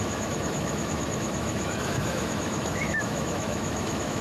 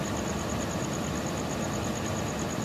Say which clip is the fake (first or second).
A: first